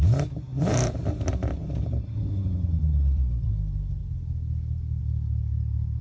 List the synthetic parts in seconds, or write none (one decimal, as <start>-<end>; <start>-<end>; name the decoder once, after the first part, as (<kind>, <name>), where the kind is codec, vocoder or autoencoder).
0.5-1.1 (vocoder, BigVGAN v2); 1.6-3.5